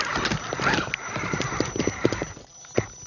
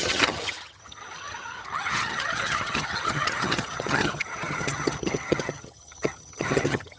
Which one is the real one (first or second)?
first